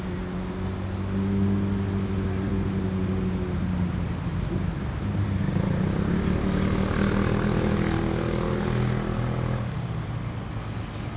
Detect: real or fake real